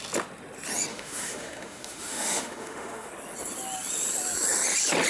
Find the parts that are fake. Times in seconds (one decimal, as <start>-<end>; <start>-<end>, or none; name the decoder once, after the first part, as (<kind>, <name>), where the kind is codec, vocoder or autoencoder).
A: 0.9-3.1 (autoencoder, DAC-VAE)